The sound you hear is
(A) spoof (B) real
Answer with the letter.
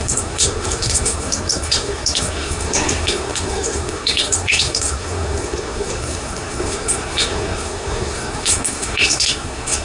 A